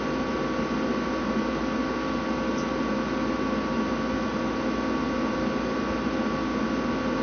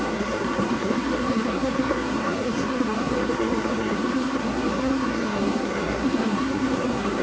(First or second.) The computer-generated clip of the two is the second